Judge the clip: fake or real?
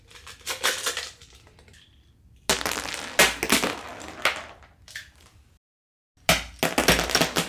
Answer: real